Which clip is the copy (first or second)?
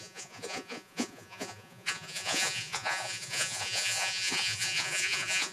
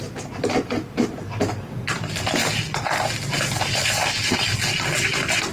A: first